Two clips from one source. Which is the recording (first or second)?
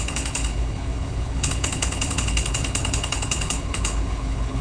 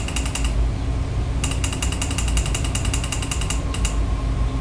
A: second